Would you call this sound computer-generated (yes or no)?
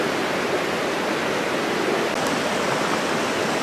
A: no